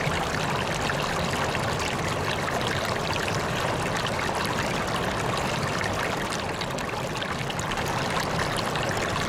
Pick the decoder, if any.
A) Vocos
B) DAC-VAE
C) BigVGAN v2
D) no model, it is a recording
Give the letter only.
D